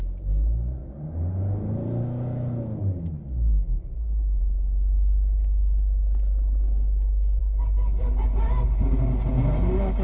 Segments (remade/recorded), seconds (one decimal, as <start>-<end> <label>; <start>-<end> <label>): 0.0-0.8 recorded; 0.8-4.4 remade; 4.4-7.4 recorded; 7.4-8.0 remade; 8.0-10.0 recorded